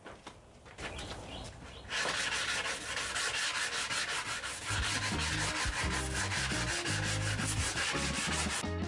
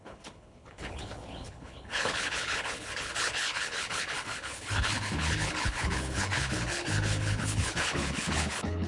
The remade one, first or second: second